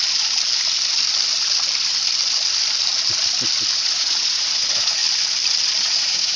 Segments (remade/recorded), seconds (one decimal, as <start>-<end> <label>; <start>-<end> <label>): 0.0-3.8 recorded; 3.8-5.0 remade; 5.0-5.9 recorded; 5.9-6.4 remade